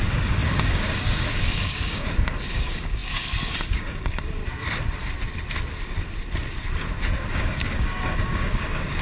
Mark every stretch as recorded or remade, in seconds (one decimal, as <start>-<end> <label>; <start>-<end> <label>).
0.0-4.4 remade; 4.4-7.3 recorded; 7.3-9.0 remade